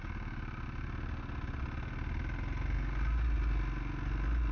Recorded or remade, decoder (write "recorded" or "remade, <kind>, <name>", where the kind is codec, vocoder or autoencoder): recorded